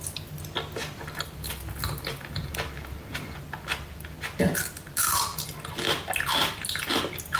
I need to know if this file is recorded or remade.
recorded